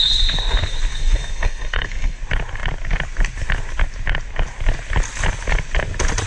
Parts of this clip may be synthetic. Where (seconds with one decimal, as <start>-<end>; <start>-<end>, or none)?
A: 0.9-2.2